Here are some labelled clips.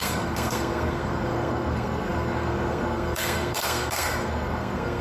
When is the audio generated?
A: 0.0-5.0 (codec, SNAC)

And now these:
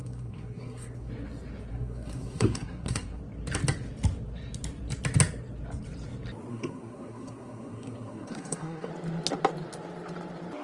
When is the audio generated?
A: 0.0-1.1 (codec, SNAC); 1.7-3.2; 6.5-8.9

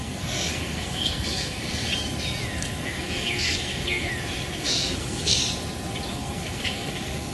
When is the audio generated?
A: 0.0-1.9 (codec, SNAC); 2.8-4.1; 4.6-5.4; 6.1-7.3

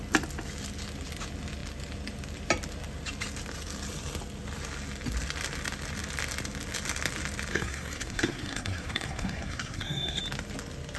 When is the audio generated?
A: 7.5-10.2 (codec, SNAC)

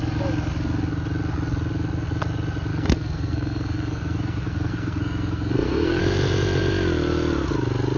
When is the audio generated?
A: 2.7-6.0 (codec, SNAC)

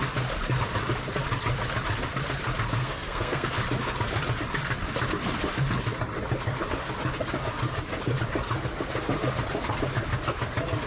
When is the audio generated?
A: 2.8-3.5 (codec, SNAC)